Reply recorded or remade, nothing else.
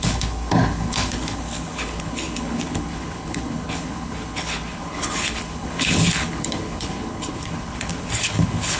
remade